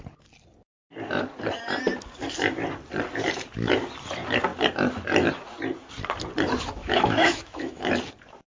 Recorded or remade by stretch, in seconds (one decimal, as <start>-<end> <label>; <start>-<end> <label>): 0.0-6.8 recorded; 6.8-7.9 remade; 7.9-8.5 recorded